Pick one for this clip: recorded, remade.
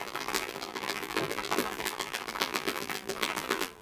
remade